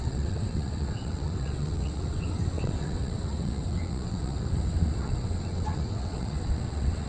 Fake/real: fake